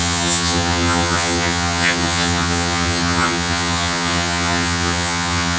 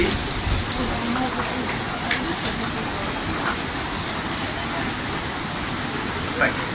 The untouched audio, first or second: second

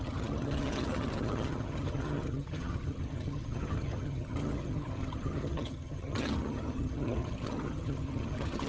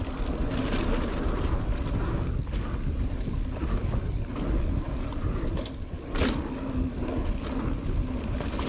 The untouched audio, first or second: second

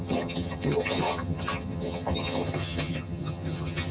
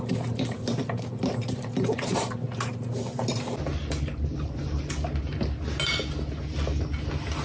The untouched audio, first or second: second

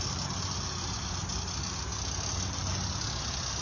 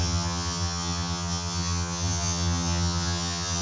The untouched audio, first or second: first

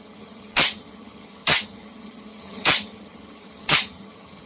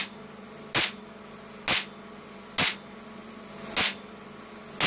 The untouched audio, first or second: second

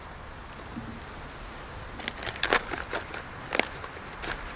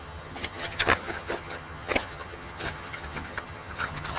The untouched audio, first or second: first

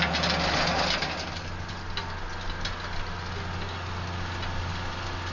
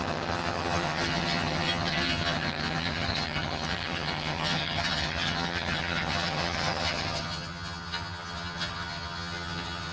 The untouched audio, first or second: first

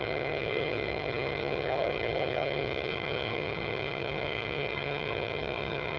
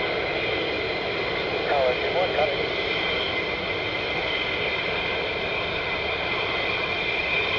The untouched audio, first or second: second